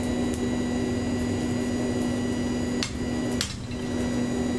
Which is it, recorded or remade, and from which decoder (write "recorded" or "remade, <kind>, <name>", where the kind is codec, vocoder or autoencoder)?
recorded